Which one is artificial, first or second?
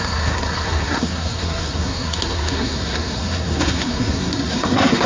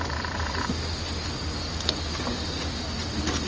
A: first